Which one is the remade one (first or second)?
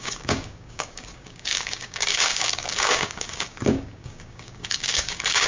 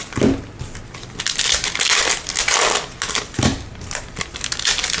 first